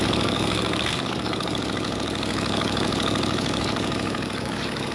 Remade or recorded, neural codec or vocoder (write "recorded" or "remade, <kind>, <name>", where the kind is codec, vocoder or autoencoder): remade, codec, DAC